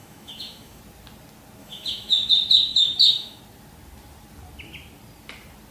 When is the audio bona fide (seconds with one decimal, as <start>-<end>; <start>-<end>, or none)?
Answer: 0.8-1.6; 2.3-2.7; 3.4-5.7